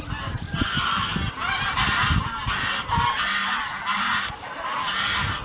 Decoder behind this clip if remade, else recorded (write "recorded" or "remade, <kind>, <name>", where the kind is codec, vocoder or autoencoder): recorded